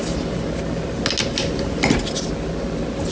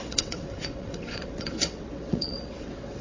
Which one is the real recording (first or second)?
first